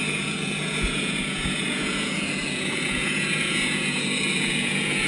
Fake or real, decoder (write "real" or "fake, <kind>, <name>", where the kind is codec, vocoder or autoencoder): fake, vocoder, Vocos